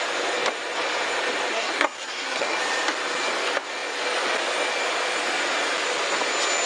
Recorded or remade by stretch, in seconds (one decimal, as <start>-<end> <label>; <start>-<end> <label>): 0.0-1.5 recorded; 1.5-2.6 remade; 2.6-6.7 recorded